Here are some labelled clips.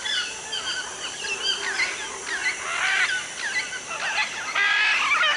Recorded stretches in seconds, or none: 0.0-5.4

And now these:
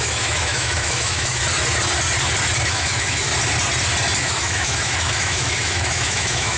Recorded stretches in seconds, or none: 1.4-2.7; 3.3-4.2

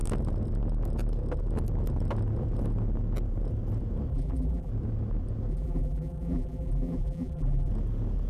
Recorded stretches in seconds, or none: 0.0-4.1; 4.7-5.5; 7.7-8.3

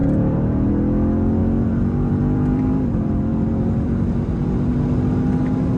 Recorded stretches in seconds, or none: 0.7-1.4; 4.7-5.8

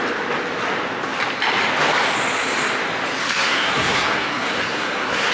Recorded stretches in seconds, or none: 0.0-3.2

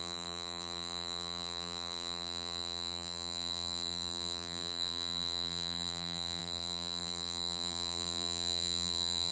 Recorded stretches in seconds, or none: none

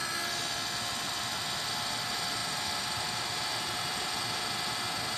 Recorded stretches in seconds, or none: 0.0-2.4

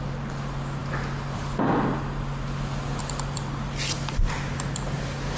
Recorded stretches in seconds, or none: 0.0-5.4